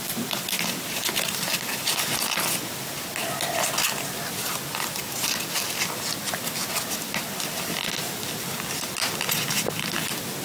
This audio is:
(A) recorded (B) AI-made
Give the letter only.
A